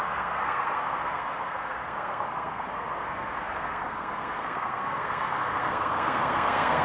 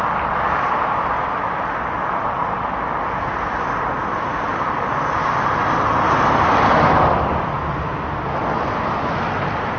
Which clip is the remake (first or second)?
first